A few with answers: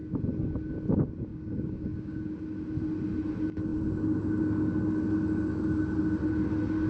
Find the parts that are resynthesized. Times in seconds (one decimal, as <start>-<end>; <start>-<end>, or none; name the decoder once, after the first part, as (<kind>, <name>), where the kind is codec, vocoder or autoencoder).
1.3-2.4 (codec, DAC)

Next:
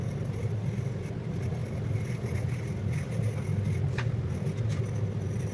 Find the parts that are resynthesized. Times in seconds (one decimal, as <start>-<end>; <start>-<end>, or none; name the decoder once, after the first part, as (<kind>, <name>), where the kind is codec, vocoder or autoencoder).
none

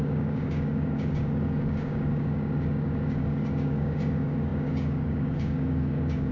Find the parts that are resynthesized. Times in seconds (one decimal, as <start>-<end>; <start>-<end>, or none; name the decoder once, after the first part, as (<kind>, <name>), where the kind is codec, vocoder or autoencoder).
0.0-6.3 (codec, DAC)

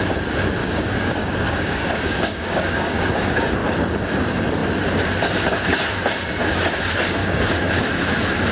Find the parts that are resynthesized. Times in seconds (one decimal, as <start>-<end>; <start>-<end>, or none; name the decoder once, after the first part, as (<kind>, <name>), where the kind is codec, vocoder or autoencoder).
0.6-3.5 (codec, DAC); 7.2-7.8

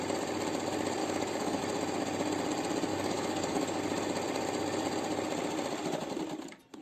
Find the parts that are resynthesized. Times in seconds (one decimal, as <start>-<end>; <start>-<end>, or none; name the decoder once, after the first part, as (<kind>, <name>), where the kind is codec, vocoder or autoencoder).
1.0-1.6 (codec, DAC); 2.9-3.8

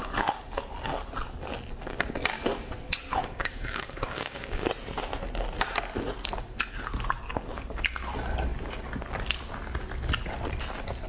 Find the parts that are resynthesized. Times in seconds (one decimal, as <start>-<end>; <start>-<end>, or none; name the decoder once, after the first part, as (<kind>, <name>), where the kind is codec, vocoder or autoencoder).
3.2-4.7 (codec, DAC)

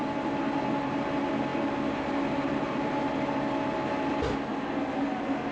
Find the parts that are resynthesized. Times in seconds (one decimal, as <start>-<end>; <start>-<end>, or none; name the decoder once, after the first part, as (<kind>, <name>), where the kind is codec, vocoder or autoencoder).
none

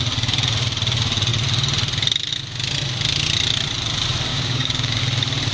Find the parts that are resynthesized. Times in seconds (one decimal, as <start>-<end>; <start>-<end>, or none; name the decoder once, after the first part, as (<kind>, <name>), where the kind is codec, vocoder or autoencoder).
4.3-5.0 (codec, DAC)